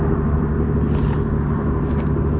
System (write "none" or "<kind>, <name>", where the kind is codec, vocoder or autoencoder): none